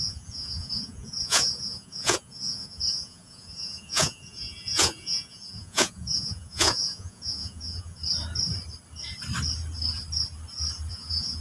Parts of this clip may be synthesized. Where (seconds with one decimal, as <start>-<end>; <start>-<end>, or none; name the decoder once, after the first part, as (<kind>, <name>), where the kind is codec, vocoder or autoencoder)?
0.0-8.0 (vocoder, Vocos); 10.9-11.4